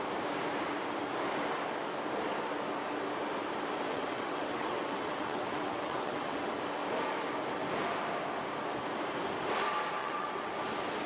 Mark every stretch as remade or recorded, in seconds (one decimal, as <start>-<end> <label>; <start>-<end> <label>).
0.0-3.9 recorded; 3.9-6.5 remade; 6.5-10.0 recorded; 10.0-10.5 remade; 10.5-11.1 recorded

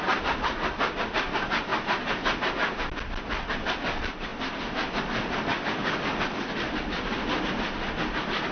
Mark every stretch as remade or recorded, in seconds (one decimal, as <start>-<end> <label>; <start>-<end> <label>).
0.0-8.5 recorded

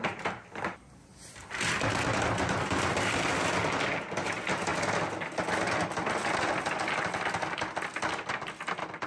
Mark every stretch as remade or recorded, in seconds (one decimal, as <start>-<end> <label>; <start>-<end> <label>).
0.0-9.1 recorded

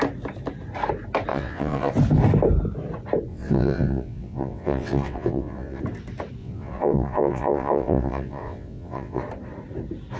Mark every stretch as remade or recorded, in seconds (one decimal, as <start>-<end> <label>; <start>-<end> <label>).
0.0-1.3 recorded; 1.3-1.9 remade; 1.9-3.3 recorded; 3.3-5.8 remade; 5.8-6.4 recorded; 6.4-9.2 remade; 9.2-10.2 recorded

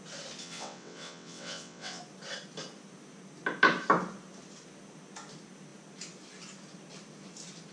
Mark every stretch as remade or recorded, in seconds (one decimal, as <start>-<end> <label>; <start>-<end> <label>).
0.0-0.4 recorded; 0.4-2.0 remade; 2.0-7.7 recorded

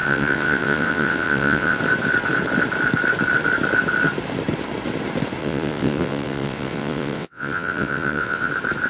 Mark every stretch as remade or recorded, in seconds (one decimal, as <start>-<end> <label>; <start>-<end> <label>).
0.0-1.8 remade; 1.8-5.4 recorded; 5.4-8.5 remade; 8.5-8.9 recorded